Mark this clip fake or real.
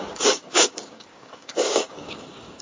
fake